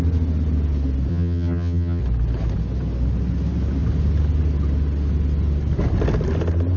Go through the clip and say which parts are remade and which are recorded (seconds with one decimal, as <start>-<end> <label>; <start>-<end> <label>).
0.0-1.1 recorded; 1.1-2.0 remade; 2.0-6.8 recorded